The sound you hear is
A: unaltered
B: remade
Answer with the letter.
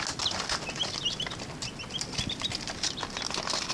A